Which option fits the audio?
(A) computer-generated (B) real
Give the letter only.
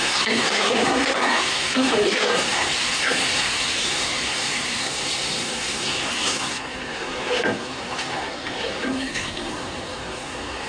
A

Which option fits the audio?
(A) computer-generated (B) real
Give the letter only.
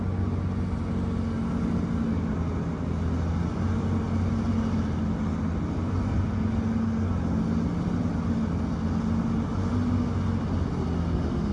B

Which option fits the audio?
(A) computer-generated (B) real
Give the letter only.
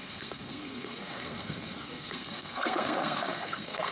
A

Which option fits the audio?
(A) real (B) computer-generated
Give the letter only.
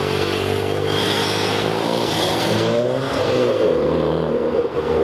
B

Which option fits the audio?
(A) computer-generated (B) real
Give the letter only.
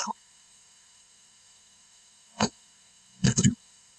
A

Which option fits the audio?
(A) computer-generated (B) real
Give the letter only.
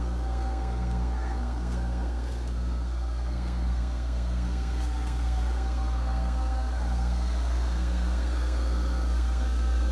A